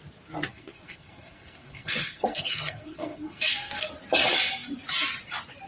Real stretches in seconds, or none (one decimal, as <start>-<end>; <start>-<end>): 0.0-0.5; 3.9-5.7